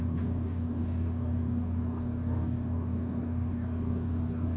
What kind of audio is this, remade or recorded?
remade